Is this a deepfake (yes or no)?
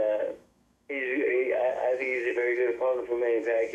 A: yes